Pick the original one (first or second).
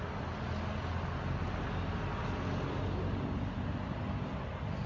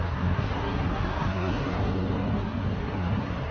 first